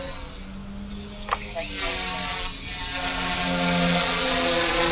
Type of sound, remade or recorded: recorded